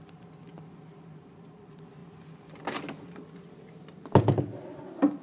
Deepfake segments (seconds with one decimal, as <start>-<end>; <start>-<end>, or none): none